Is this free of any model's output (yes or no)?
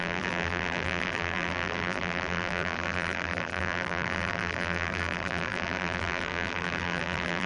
no